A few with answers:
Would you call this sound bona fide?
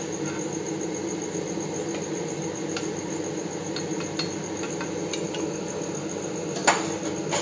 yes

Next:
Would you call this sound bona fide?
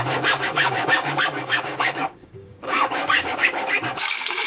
no